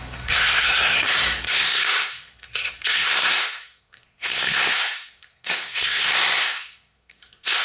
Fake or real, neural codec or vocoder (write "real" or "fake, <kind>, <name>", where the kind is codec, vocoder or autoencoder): fake, codec, SNAC